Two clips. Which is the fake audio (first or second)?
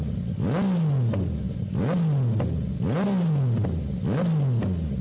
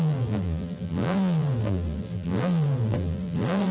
second